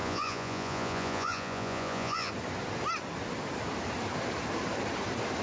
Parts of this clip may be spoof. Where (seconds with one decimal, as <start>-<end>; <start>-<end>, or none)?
0.0-2.3